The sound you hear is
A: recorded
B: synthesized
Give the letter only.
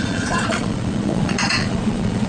B